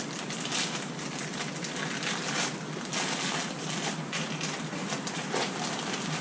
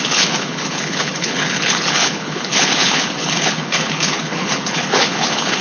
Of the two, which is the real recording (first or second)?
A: first